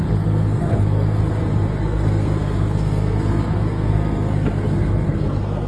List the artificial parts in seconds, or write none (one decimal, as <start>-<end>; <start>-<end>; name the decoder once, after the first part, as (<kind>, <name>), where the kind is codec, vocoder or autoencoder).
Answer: 0.0-1.2 (codec, SNAC); 1.8-5.7